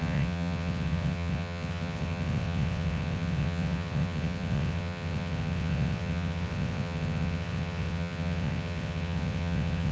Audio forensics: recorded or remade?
remade